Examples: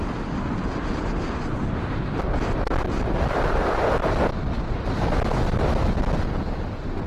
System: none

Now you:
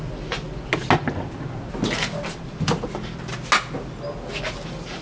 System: none